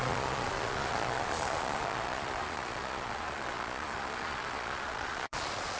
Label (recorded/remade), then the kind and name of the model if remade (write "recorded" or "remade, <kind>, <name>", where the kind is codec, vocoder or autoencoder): remade, vocoder, Vocos